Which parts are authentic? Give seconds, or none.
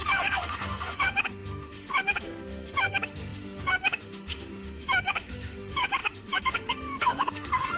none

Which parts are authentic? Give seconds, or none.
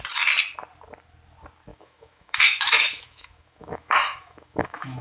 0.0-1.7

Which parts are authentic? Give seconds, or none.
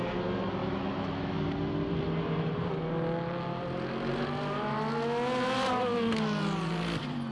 0.0-0.6; 1.3-7.3